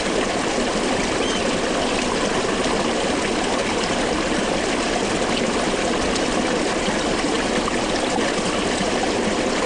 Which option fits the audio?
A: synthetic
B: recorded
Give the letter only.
B